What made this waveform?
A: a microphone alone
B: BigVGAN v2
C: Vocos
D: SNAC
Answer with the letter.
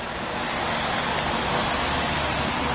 A